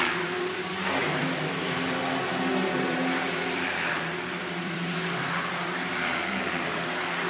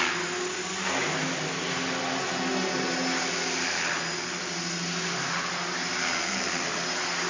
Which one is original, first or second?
second